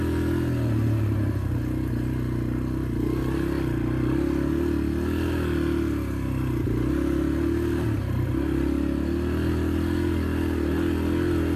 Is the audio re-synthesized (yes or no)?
no